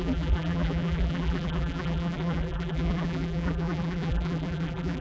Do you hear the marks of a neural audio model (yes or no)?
yes